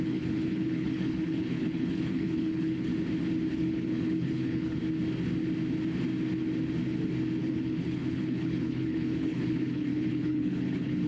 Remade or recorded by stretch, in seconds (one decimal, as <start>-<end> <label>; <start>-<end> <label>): 0.0-2.9 remade; 2.9-3.5 recorded; 3.5-4.8 remade; 4.8-7.4 recorded; 7.4-11.1 remade